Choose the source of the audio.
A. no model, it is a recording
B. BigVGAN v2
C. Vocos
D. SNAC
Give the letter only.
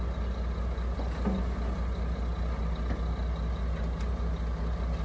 A